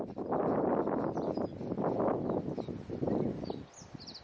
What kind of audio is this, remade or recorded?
recorded